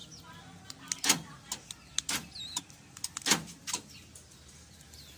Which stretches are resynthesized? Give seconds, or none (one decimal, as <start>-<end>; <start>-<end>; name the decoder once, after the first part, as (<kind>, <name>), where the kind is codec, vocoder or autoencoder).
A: none